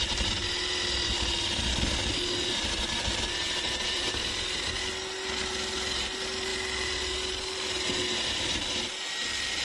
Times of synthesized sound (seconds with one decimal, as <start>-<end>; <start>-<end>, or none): none